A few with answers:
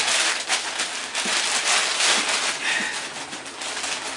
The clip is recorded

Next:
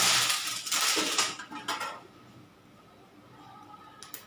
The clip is recorded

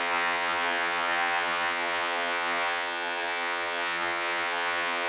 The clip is remade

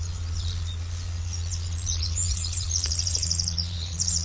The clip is remade